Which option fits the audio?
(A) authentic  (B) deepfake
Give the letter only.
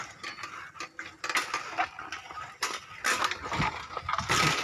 A